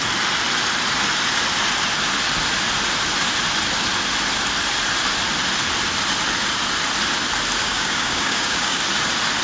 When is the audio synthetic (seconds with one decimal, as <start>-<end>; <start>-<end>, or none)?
7.6-8.8